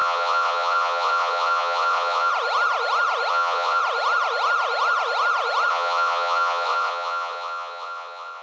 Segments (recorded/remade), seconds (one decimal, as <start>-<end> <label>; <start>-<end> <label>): 0.0-2.3 remade; 2.3-3.3 recorded; 3.3-3.8 remade; 3.8-5.7 recorded; 5.7-8.4 remade